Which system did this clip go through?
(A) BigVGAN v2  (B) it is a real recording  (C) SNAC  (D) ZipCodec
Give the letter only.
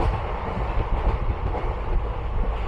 B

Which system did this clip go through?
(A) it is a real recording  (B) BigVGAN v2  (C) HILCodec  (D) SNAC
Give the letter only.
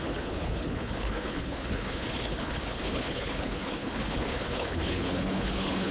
C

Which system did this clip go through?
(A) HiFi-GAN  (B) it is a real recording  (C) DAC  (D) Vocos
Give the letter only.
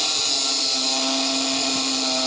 B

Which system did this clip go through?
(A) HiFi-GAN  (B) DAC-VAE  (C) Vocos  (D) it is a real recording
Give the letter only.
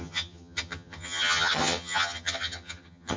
A